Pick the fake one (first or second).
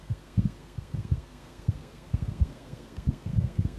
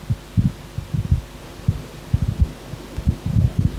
first